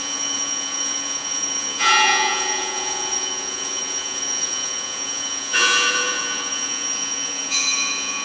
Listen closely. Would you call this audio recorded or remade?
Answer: remade